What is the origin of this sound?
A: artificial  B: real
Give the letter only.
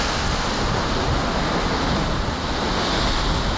B